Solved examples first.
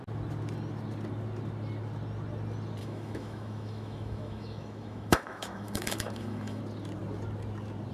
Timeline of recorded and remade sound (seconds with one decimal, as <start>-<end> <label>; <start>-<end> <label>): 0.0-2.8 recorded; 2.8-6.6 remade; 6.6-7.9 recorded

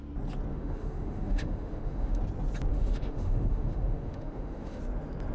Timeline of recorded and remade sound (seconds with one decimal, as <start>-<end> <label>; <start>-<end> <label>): 0.0-0.5 recorded; 0.5-2.2 remade; 2.2-2.7 recorded; 2.7-4.8 remade; 4.8-5.3 recorded

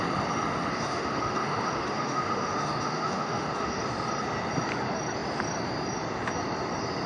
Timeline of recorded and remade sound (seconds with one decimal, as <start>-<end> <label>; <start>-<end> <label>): 0.0-0.7 recorded; 0.7-3.8 remade; 3.8-7.1 recorded